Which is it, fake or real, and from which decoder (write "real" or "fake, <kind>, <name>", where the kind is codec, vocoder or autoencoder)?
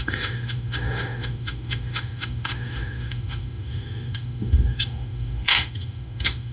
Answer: fake, autoencoder, DAC-VAE